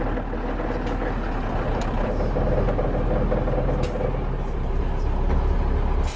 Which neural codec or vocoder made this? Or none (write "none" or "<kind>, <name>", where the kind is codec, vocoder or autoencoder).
none